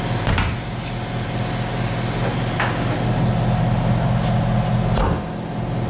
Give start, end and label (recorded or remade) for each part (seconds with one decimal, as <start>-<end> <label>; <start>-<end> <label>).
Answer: 0.0-5.9 recorded